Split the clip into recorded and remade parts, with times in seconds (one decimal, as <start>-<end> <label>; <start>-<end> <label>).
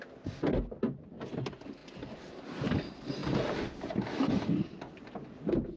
0.0-5.8 recorded